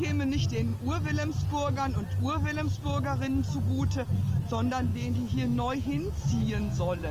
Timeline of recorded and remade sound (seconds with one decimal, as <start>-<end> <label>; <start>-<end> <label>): 0.0-4.9 recorded; 4.9-7.1 remade